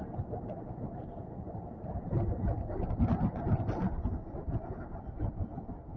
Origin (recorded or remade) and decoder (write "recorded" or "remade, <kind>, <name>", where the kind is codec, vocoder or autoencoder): recorded